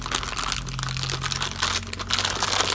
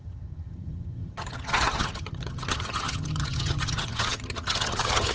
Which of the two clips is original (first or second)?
first